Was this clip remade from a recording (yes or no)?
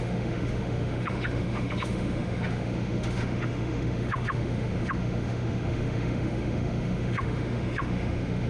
yes